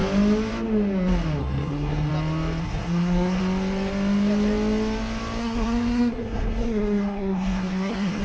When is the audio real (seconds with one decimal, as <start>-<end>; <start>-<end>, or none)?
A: 0.0-1.4; 2.1-2.6; 3.4-5.4